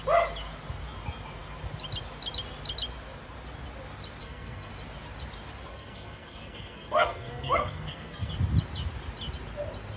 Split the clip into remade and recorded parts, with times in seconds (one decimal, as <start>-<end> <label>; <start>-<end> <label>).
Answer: 0.0-4.2 recorded; 4.2-4.7 remade; 4.7-5.7 recorded; 5.7-8.3 remade; 8.3-10.0 recorded